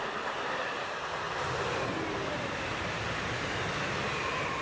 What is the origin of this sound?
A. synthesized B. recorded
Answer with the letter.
B